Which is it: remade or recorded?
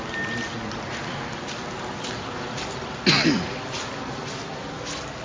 recorded